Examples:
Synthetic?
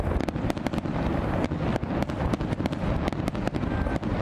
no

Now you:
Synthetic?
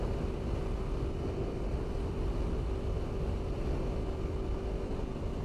no